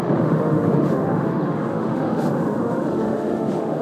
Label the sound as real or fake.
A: fake